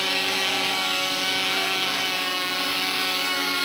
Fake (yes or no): yes